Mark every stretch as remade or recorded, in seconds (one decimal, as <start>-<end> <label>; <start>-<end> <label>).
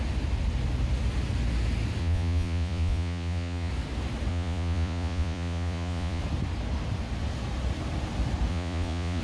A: 0.0-2.0 recorded; 2.0-3.7 remade; 3.7-4.3 recorded; 4.3-6.2 remade; 6.2-8.5 recorded; 8.5-9.2 remade